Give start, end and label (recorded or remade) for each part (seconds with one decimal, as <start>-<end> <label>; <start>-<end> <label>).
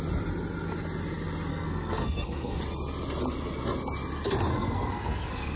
0.0-1.5 recorded; 1.5-2.6 remade; 2.6-4.5 recorded; 4.5-5.6 remade